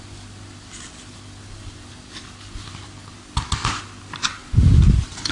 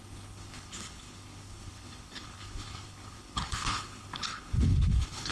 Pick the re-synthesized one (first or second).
second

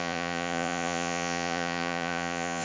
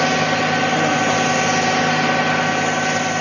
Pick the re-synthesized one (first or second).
first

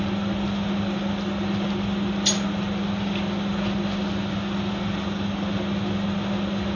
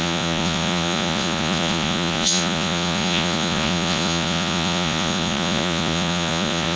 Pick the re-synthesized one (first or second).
second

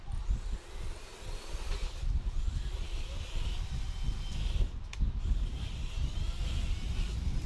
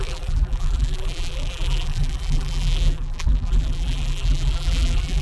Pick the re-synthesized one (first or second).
second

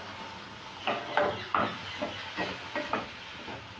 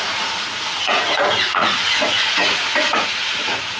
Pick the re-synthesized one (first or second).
second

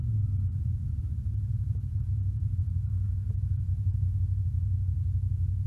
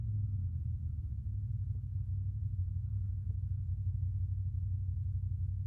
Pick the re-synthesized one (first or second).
first